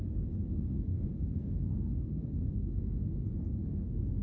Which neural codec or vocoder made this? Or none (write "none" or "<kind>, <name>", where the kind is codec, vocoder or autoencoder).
codec, SNAC